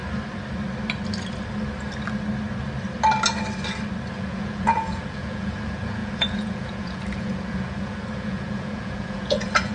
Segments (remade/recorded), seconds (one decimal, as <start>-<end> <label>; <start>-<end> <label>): 0.0-4.1 recorded; 4.1-9.7 remade